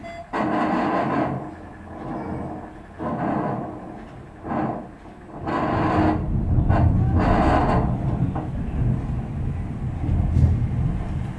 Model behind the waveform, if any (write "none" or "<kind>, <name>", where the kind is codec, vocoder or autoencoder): none